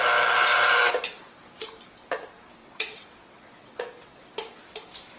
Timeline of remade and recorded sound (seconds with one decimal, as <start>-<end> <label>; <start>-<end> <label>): 0.0-2.6 recorded; 2.6-4.2 remade; 4.2-5.2 recorded